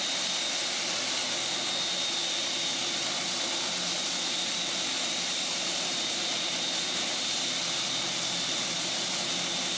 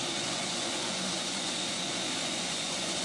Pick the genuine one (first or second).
first